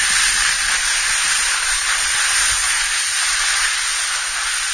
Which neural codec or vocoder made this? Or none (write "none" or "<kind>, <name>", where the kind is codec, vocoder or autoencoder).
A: none